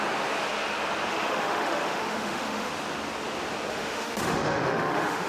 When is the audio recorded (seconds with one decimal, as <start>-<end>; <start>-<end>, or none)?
0.0-1.1; 2.7-3.7